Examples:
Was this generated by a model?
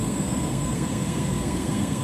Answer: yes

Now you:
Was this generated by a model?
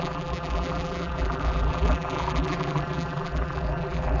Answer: yes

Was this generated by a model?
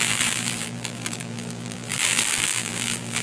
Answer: yes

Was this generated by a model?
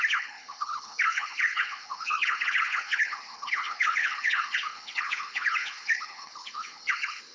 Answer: yes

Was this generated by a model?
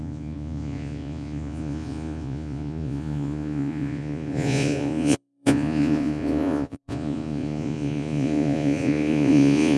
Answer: yes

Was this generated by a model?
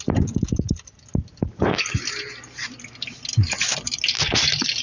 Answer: no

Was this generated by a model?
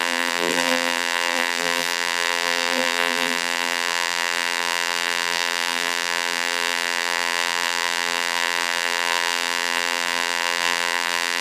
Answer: yes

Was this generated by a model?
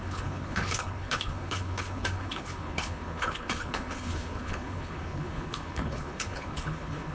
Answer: yes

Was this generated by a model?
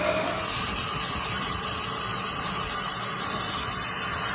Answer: no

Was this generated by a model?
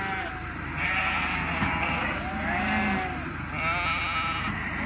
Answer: no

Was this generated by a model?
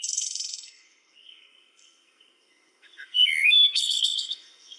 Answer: yes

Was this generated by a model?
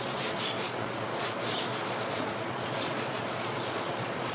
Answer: yes